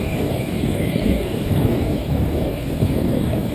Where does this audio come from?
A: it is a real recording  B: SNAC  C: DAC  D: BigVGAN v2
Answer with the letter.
C